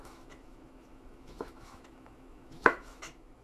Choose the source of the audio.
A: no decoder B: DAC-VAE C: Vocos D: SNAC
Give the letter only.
B